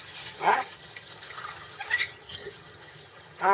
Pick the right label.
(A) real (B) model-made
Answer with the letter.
B